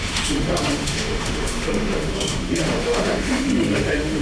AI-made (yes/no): yes